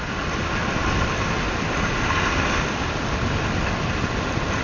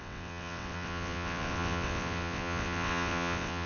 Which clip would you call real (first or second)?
first